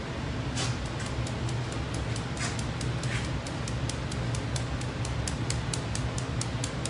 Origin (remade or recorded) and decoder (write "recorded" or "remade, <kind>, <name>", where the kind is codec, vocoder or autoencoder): recorded